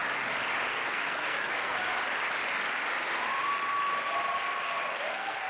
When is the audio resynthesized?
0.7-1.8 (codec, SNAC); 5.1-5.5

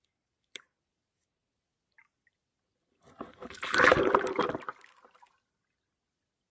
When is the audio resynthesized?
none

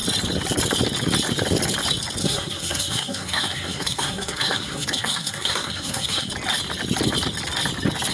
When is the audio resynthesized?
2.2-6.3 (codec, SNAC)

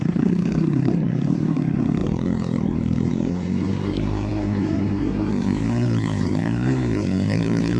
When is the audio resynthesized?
0.0-7.8 (codec, SNAC)